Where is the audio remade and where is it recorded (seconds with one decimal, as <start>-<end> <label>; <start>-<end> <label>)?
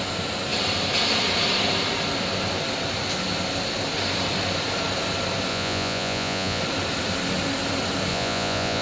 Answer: 0.0-5.5 recorded; 5.5-6.6 remade; 6.6-8.1 recorded; 8.1-8.8 remade